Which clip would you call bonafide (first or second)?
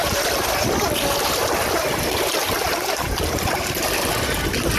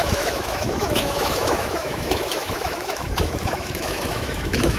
first